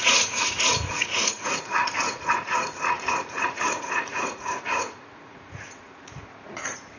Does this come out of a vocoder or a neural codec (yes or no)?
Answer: yes